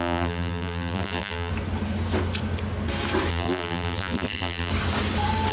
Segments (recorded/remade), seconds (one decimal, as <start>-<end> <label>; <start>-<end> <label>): 0.0-1.5 remade; 1.5-3.3 recorded; 3.3-4.7 remade; 4.7-5.5 recorded